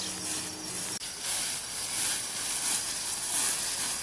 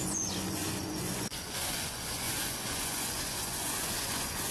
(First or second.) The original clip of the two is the first